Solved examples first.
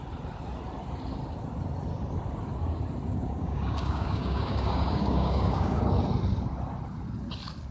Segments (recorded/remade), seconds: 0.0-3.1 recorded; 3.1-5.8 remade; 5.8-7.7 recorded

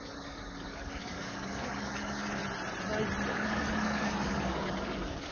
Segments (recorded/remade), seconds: 0.0-2.4 remade; 2.4-3.3 recorded; 3.3-5.3 remade

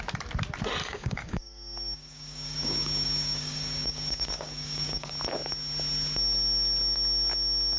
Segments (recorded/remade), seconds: 0.0-0.8 recorded; 0.8-5.1 remade; 5.1-7.8 recorded